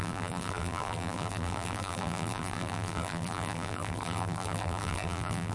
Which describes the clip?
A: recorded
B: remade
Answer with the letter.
B